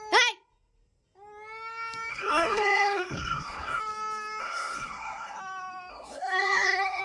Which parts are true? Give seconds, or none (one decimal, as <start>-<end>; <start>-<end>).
0.0-2.1; 3.8-4.4; 5.4-5.9